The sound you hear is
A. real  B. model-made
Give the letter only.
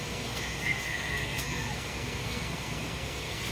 B